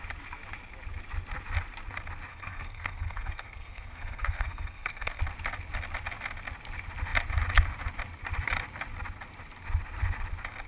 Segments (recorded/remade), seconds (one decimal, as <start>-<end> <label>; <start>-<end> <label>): 0.0-2.3 recorded; 2.3-5.2 remade; 5.2-10.7 recorded